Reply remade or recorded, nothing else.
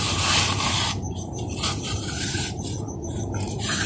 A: remade